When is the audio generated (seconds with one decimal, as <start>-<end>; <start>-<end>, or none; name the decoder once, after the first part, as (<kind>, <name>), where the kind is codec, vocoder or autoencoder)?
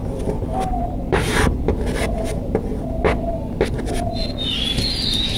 none